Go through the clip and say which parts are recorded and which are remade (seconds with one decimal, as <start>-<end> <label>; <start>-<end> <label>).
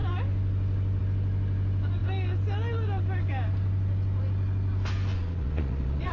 0.0-5.1 recorded; 5.1-6.1 remade